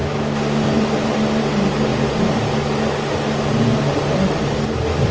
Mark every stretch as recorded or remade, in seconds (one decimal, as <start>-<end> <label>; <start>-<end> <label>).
0.0-5.1 recorded

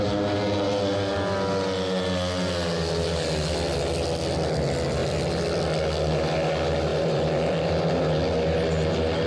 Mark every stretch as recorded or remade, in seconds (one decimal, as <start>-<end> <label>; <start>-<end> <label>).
0.0-5.0 recorded; 5.0-5.7 remade; 5.7-6.9 recorded; 6.9-8.1 remade; 8.1-9.3 recorded

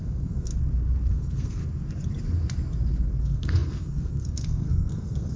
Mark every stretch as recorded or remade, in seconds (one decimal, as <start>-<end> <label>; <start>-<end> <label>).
0.0-0.5 remade; 0.5-1.1 recorded; 1.1-1.6 remade; 1.6-3.2 recorded; 3.2-5.4 remade

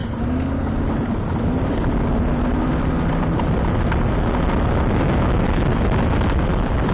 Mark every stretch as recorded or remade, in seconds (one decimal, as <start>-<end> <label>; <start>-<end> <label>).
0.0-6.9 recorded